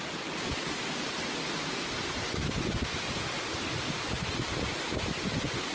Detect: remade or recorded recorded